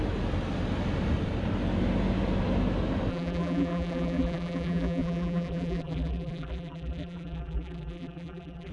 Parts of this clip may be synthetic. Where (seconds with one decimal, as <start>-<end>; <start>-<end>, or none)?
3.1-8.7